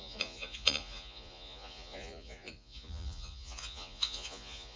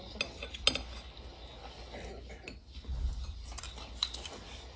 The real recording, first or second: second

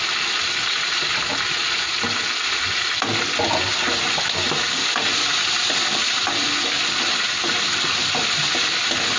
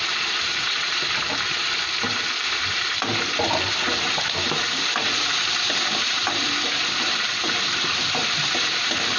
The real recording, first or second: first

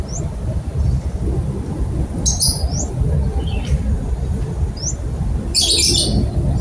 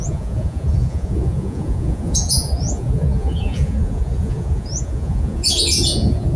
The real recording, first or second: first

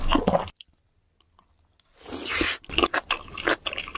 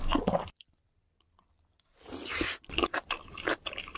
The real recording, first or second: first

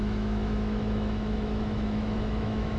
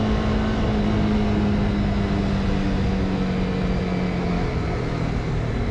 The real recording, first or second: second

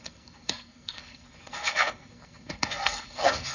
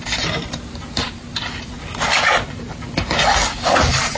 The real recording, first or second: second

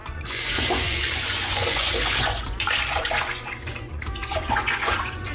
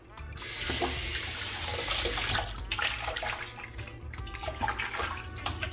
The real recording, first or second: second